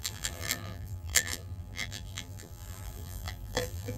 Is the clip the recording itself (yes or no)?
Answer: no